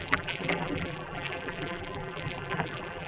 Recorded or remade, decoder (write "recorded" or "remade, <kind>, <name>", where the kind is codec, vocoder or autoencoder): remade, vocoder, BigVGAN v2